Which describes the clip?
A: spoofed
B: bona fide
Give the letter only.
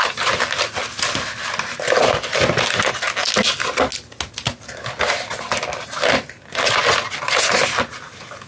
B